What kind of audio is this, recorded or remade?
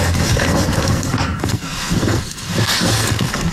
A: remade